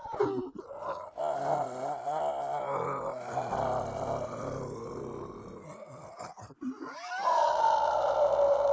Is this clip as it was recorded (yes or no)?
yes